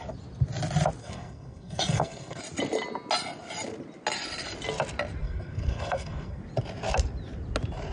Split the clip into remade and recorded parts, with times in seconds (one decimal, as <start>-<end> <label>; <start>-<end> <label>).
0.0-1.0 recorded; 1.0-2.4 remade; 2.4-5.2 recorded; 5.2-6.4 remade; 6.4-7.9 recorded